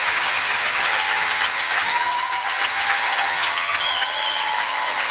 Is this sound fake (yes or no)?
yes